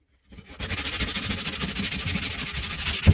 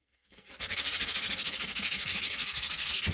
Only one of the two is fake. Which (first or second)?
second